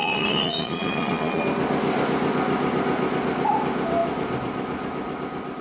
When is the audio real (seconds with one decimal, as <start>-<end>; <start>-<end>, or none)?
1.4-5.6